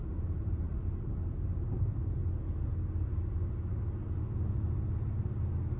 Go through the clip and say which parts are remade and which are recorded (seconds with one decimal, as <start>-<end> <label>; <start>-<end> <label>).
0.0-2.2 remade; 2.2-5.8 recorded